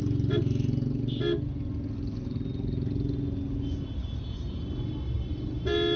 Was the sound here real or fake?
real